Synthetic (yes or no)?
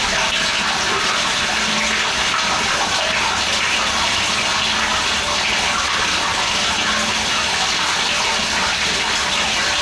no